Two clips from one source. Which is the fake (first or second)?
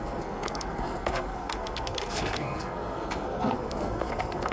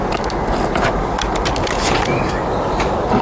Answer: first